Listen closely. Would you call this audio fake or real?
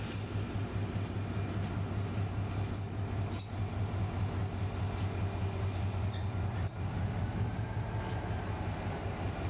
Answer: real